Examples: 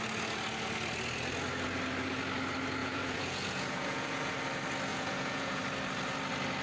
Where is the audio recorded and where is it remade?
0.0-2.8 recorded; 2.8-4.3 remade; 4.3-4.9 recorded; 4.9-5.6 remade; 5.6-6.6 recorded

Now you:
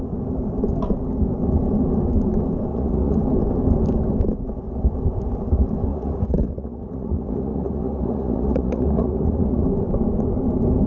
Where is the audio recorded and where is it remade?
0.0-2.7 recorded; 2.7-3.2 remade; 3.2-5.9 recorded; 5.9-9.6 remade; 9.6-10.9 recorded